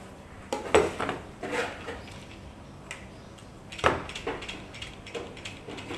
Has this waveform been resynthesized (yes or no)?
no